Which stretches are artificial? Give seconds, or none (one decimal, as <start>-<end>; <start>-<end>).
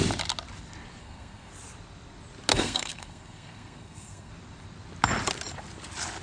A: 1.0-1.5; 2.5-4.3